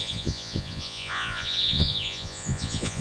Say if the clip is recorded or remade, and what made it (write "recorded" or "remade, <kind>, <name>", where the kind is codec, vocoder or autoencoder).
remade, vocoder, Vocos